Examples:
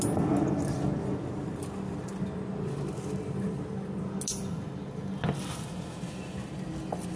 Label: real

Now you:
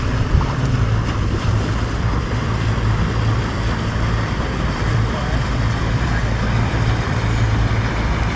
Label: fake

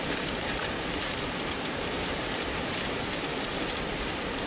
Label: fake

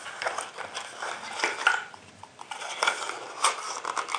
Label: real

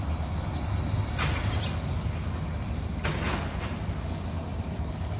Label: real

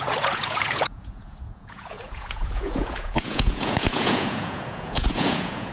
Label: fake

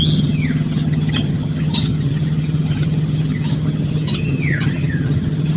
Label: fake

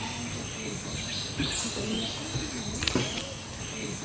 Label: real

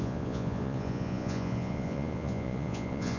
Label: fake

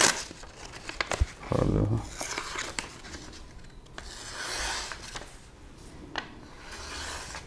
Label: real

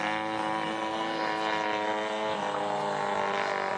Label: real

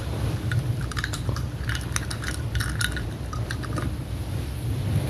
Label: fake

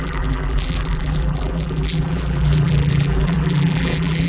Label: fake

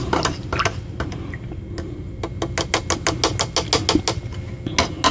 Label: real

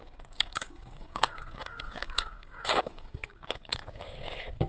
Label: fake